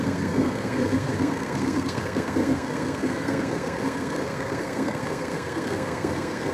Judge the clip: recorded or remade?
remade